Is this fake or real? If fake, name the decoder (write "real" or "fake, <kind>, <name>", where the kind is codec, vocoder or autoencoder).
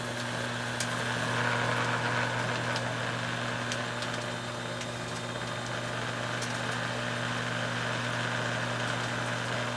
real